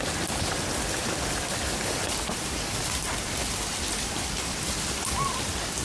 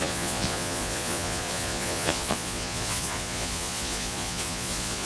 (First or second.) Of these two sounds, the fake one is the second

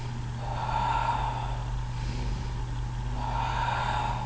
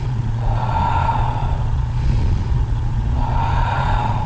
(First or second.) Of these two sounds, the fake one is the second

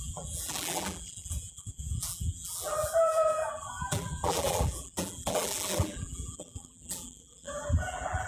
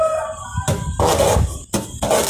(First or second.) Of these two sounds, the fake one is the first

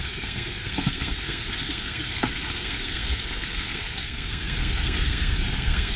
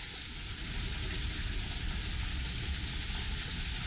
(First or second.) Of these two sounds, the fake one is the first